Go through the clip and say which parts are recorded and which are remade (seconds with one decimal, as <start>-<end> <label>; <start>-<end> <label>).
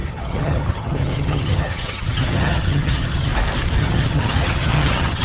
0.0-3.3 remade; 3.3-3.8 recorded; 3.8-5.2 remade